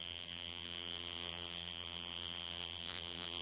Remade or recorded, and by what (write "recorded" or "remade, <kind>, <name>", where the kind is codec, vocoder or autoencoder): remade, vocoder, BigVGAN v2